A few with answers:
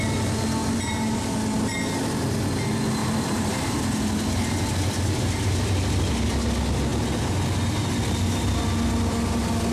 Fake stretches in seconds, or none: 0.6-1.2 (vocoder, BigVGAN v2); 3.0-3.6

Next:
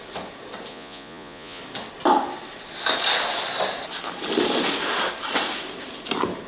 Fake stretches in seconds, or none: 0.7-1.6 (vocoder, Vocos)

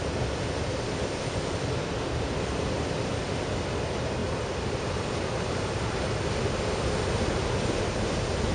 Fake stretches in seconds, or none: none

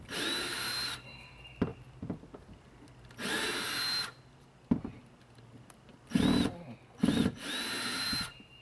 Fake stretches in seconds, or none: none

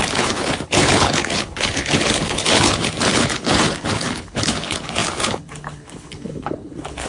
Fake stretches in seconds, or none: 0.0-7.1 (codec, HILCodec)

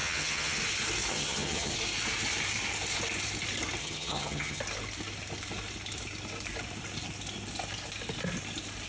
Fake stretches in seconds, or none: 0.0-0.6 (vocoder, HiFi-GAN); 1.1-1.7; 3.8-4.6

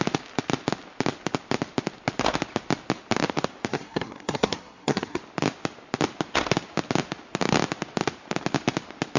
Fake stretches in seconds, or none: 3.7-5.2 (codec, SNAC)

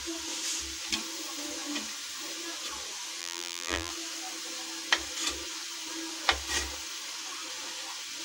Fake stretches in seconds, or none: 3.2-3.9 (vocoder, BigVGAN v2)